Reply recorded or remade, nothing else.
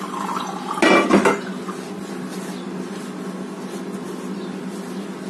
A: recorded